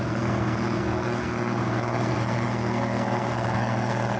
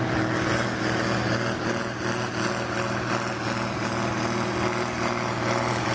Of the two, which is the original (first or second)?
second